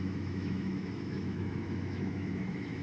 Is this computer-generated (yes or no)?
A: yes